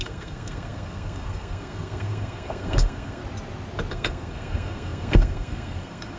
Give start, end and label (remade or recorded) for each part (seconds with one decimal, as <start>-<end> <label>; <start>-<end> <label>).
0.0-3.2 remade; 3.2-3.9 recorded; 3.9-6.2 remade